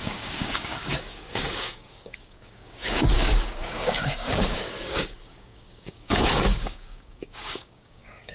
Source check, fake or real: fake